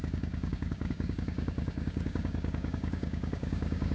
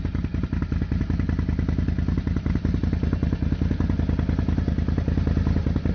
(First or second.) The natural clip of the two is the second